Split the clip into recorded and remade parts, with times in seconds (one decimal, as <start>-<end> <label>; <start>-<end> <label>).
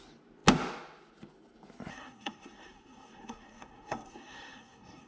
0.0-1.9 recorded; 1.9-5.1 remade